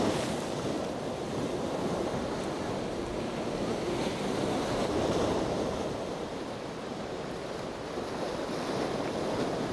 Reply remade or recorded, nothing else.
remade